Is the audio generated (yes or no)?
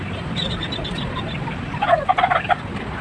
no